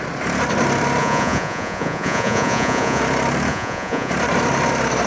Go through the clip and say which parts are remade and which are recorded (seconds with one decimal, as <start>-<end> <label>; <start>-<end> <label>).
0.0-1.0 recorded; 1.0-3.0 remade; 3.0-3.5 recorded; 3.5-4.1 remade; 4.1-5.1 recorded